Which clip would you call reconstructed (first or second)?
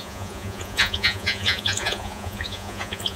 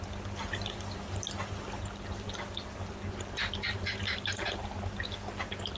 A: first